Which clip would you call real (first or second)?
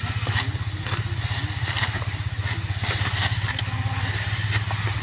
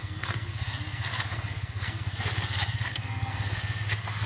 first